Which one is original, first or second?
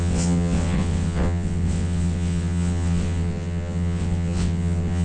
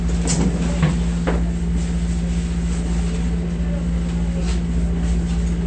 second